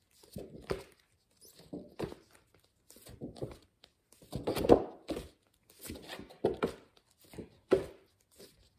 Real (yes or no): yes